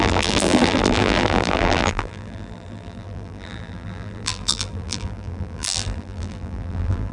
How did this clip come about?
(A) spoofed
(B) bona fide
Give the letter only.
A